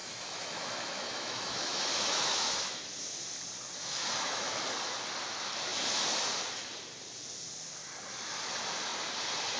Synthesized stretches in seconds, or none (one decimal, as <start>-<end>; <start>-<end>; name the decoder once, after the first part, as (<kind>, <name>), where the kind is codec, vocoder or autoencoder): 0.0-2.8 (autoencoder, DAC-VAE); 3.8-4.6